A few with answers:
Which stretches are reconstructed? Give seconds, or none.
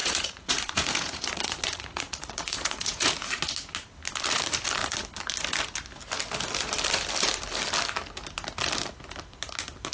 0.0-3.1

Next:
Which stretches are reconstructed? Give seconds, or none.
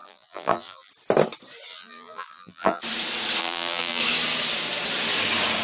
0.0-0.9; 1.7-2.8; 3.4-4.0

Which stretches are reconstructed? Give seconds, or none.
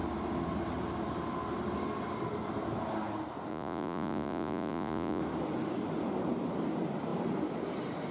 3.5-5.2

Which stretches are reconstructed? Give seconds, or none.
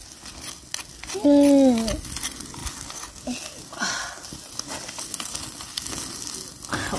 none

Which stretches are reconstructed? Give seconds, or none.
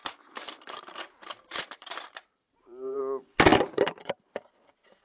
0.0-3.0; 3.5-4.4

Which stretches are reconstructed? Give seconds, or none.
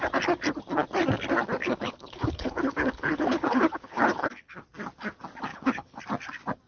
1.6-4.5; 5.5-6.0